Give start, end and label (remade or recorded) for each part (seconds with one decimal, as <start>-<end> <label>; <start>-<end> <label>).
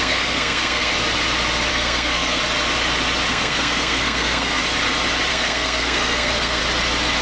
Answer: 0.0-0.9 remade; 0.9-1.7 recorded; 1.7-2.4 remade; 2.4-3.3 recorded; 3.3-4.6 remade; 4.6-5.3 recorded; 5.3-6.6 remade; 6.6-7.2 recorded